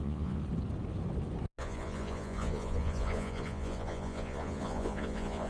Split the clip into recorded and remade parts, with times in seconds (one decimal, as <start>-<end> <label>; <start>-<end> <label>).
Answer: 0.0-0.4 remade; 0.4-1.6 recorded; 1.6-5.5 remade